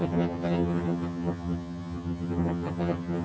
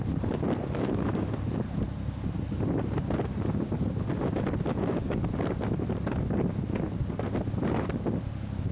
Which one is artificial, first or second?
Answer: first